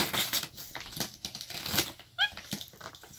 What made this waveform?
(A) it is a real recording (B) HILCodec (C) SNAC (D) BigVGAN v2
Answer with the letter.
A